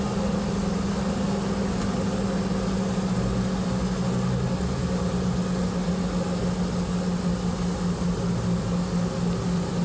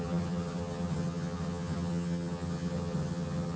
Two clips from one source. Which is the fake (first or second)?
second